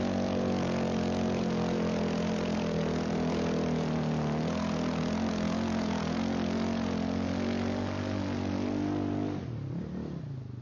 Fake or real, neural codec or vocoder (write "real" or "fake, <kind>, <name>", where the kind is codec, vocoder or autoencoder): real